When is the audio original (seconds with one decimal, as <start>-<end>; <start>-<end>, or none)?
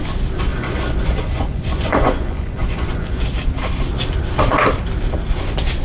0.0-0.5; 3.2-5.8